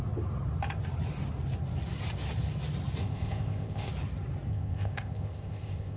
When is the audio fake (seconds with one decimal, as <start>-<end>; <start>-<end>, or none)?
3.0-3.9; 4.5-6.0